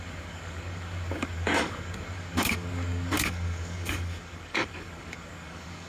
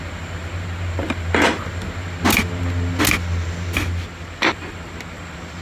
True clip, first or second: second